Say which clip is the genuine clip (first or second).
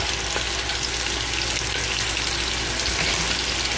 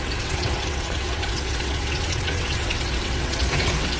first